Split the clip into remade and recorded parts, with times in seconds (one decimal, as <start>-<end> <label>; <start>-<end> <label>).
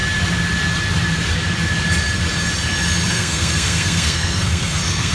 0.0-3.1 recorded; 3.1-5.1 remade